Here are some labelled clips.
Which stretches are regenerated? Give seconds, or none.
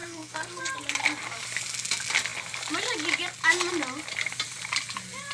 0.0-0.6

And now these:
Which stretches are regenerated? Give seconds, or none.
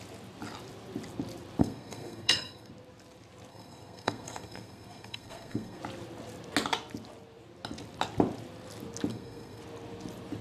1.6-2.7; 3.5-5.8; 9.1-9.6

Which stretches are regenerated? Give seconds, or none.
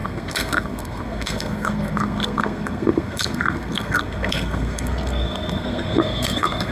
0.0-6.7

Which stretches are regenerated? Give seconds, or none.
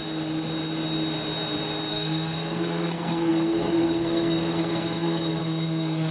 1.9-6.1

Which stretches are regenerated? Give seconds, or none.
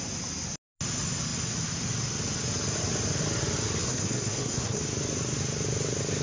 3.8-4.8